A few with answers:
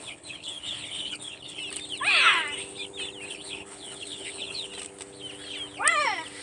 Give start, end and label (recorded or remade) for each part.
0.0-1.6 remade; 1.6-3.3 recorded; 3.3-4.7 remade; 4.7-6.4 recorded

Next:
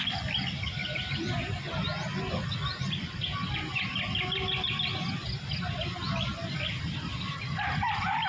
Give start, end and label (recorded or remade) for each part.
0.0-8.3 recorded

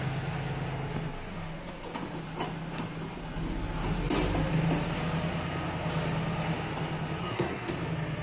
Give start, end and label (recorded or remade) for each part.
0.0-7.2 recorded; 7.2-7.7 remade; 7.7-8.2 recorded

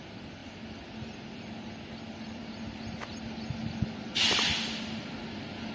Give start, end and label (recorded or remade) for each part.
0.0-5.7 recorded

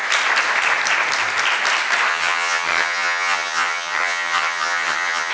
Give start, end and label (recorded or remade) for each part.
0.0-2.1 recorded; 2.1-5.3 remade

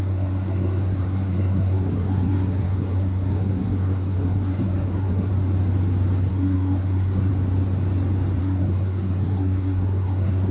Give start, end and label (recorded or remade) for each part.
0.0-5.3 remade; 5.3-6.3 recorded; 6.3-7.3 remade; 7.3-8.4 recorded; 8.4-10.5 remade

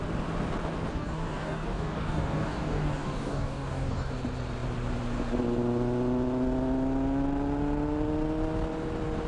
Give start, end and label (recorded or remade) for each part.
0.0-0.9 recorded; 0.9-4.1 remade; 4.1-9.3 recorded